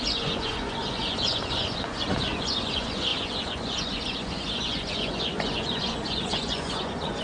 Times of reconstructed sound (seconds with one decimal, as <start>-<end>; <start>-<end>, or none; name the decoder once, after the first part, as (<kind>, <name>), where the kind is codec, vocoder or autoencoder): 0.0-7.2 (vocoder, Vocos)